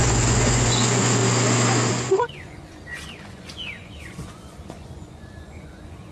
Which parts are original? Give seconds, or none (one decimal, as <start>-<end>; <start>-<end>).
1.2-1.9